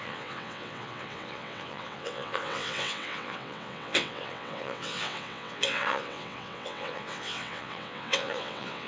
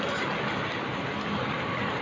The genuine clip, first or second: second